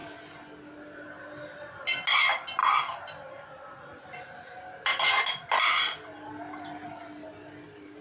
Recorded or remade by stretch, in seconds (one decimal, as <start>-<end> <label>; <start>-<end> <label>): 0.0-8.0 recorded